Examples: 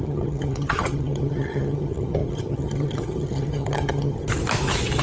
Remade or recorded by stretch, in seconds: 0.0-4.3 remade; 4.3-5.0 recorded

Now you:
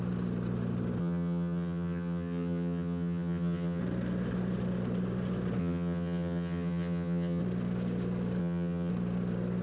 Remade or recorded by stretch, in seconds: 0.0-1.0 recorded; 1.0-3.8 remade; 3.8-5.6 recorded; 5.6-7.4 remade; 7.4-8.4 recorded; 8.4-8.9 remade; 8.9-9.6 recorded

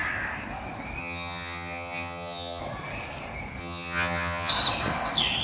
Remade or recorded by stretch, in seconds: 0.0-1.0 recorded; 1.0-2.6 remade; 2.6-3.6 recorded; 3.6-4.5 remade; 4.5-5.4 recorded

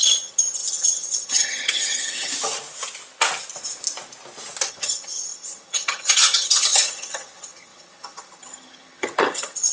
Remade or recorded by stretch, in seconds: 0.0-2.3 remade; 2.3-4.7 recorded; 4.7-9.7 remade

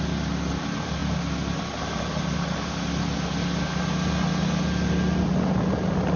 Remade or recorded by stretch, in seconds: 0.0-6.2 recorded